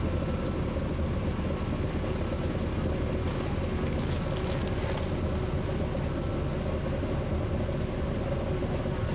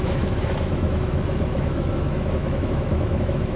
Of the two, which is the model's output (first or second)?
second